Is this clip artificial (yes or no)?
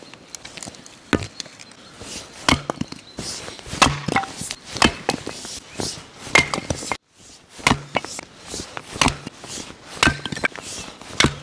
no